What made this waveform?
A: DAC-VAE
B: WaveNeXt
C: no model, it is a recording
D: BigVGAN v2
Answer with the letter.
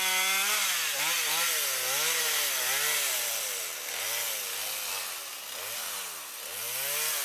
C